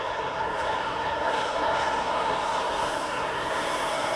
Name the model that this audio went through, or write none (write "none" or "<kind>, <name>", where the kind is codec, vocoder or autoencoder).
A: codec, SNAC